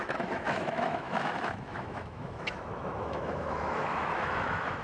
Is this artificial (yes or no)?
yes